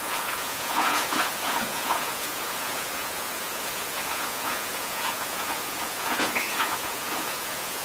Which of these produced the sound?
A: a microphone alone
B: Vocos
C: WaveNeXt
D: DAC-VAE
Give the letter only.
B